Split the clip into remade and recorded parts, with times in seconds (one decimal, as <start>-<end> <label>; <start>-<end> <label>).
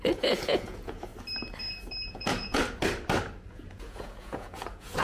0.0-1.1 remade; 1.1-2.1 recorded; 2.1-2.6 remade; 2.6-3.5 recorded; 3.5-5.0 remade